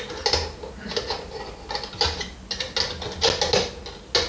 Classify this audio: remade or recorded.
recorded